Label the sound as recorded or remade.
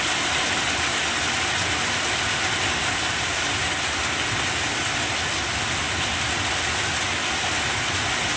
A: recorded